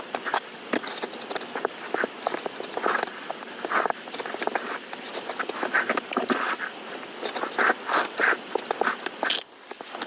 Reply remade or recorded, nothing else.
recorded